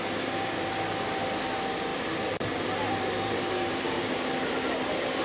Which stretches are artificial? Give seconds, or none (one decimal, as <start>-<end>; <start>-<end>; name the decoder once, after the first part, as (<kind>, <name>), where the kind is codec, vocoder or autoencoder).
1.9-5.2 (vocoder, BigVGAN v2)